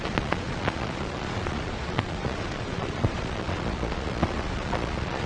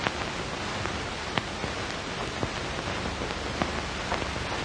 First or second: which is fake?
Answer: first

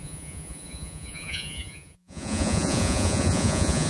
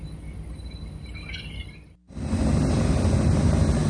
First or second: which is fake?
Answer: first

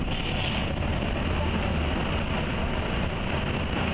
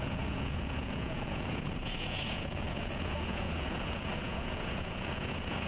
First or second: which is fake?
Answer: second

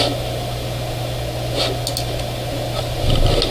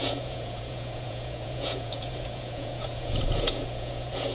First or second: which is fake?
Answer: second